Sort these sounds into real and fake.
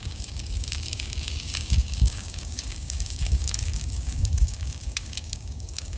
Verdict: fake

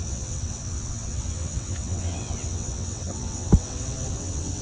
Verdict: fake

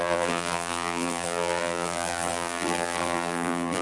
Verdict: fake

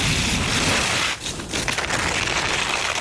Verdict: real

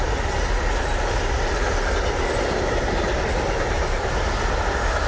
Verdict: real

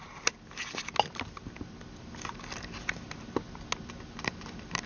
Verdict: real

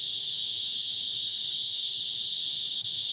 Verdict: fake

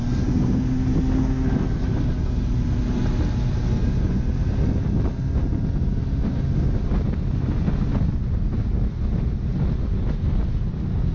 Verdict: real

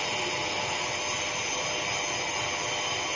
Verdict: real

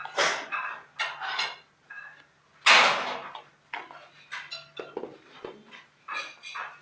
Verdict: real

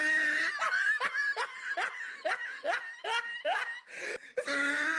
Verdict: real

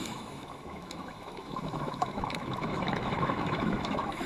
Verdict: fake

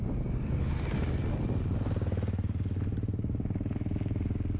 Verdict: real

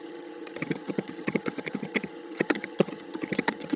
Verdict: fake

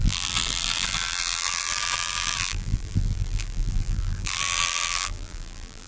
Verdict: fake